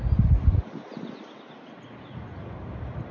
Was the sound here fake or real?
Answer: real